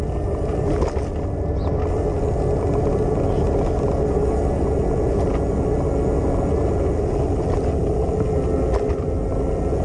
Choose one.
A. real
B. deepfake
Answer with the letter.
A